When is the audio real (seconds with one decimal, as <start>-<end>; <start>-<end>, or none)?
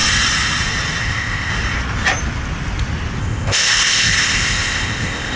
0.0-1.0; 1.5-3.2